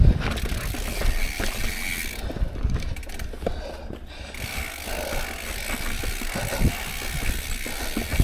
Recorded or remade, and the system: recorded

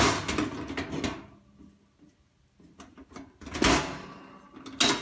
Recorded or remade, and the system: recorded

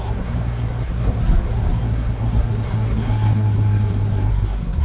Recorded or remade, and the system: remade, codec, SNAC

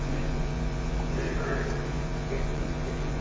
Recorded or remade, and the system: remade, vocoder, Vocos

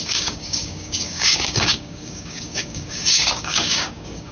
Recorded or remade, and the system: remade, codec, DAC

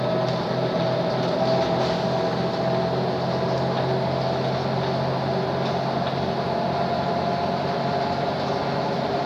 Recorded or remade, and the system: recorded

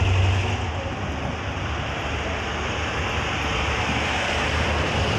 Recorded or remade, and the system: recorded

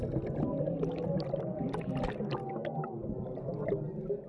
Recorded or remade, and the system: recorded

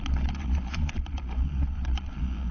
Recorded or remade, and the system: remade, vocoder, Vocos